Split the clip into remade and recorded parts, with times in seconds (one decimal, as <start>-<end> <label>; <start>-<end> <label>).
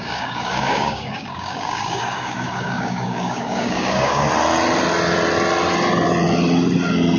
0.0-4.3 remade; 4.3-7.2 recorded